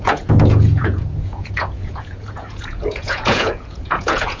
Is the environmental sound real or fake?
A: fake